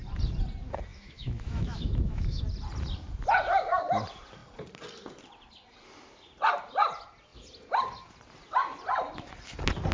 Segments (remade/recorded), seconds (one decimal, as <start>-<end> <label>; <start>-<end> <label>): 0.0-0.9 recorded; 0.9-2.4 remade; 2.4-9.9 recorded